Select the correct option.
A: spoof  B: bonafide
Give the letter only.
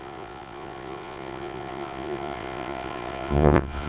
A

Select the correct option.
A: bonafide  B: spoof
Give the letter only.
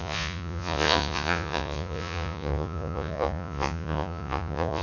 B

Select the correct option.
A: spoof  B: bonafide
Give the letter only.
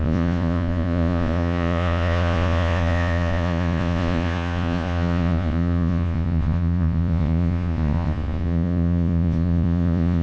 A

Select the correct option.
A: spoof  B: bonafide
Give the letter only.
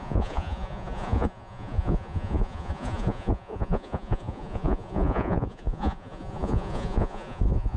A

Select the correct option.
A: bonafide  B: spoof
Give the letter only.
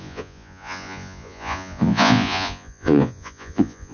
B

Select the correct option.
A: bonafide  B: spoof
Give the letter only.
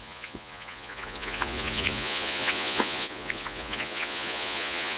B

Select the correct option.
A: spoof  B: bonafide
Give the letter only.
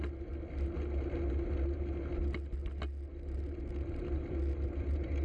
B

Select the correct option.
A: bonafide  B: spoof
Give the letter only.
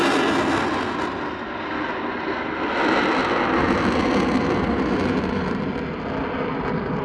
A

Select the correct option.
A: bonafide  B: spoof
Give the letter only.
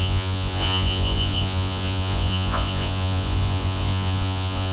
B